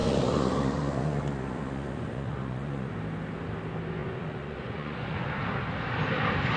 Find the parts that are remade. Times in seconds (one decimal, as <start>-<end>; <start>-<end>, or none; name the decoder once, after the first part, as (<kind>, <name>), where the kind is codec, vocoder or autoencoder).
0.0-2.9 (vocoder, Vocos); 4.0-5.3